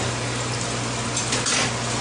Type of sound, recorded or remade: recorded